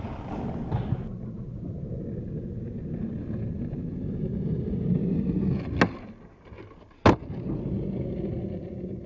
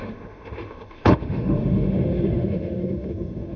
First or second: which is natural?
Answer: first